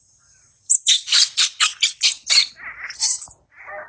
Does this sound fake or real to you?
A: real